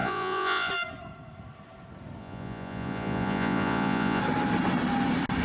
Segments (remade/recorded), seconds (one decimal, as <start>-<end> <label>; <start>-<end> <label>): 0.0-0.7 remade; 0.7-2.2 recorded; 2.2-4.2 remade; 4.2-5.4 recorded